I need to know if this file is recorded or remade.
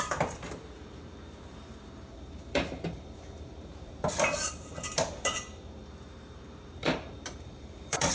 remade